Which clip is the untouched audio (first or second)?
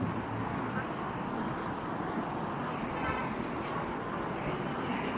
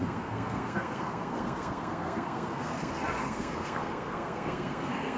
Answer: first